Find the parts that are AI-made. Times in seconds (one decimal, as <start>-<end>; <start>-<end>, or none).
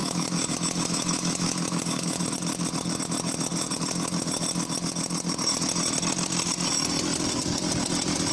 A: 0.0-2.2